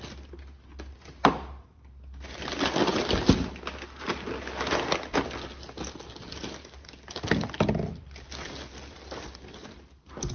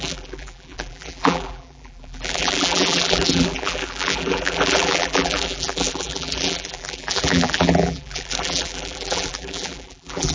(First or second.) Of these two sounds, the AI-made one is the second